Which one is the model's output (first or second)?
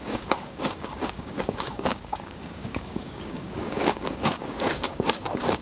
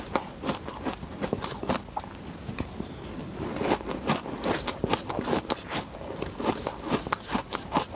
first